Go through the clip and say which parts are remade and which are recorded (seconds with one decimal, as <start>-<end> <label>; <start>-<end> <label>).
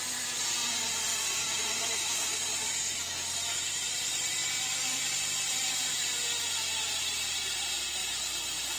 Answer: 0.0-1.1 recorded; 1.1-2.7 remade; 2.7-8.8 recorded